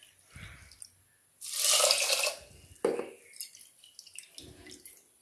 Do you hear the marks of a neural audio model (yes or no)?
no